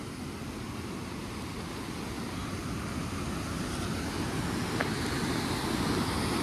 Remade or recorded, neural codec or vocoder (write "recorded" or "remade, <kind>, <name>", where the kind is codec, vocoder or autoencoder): recorded